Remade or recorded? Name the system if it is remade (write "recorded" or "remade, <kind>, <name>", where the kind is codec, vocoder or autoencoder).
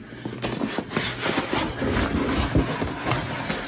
recorded